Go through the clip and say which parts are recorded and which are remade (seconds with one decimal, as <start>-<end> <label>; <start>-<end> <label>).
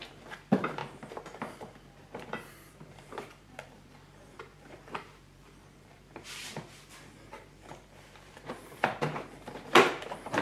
0.0-10.4 remade